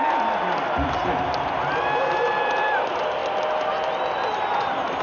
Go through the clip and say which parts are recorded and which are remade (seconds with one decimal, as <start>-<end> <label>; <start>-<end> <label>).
0.0-5.0 recorded